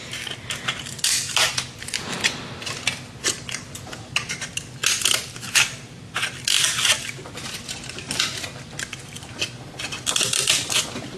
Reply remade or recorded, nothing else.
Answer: recorded